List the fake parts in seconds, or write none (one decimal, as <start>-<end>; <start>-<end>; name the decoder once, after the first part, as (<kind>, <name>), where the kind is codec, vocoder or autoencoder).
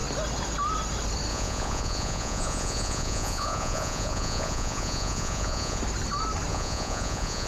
1.3-5.8 (vocoder, Vocos); 6.5-7.5